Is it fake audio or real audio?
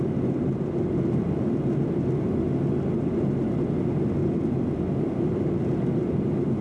real